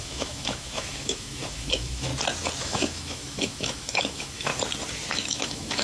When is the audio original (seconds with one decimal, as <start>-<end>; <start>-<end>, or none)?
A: 2.1-2.6; 4.5-5.1